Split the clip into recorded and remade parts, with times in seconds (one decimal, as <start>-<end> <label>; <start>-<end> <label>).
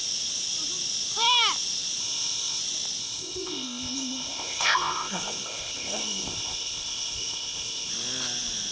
0.0-2.0 recorded; 2.0-2.6 remade; 2.6-3.0 recorded; 3.0-7.9 remade; 7.9-8.7 recorded